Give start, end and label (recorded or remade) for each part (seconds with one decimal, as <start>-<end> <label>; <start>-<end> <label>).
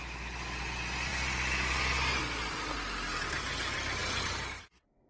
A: 0.0-5.1 recorded